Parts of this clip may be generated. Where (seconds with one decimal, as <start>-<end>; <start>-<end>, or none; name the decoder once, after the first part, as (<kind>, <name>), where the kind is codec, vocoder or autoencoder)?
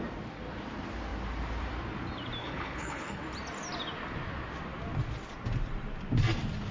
2.4-3.2 (codec, HILCodec)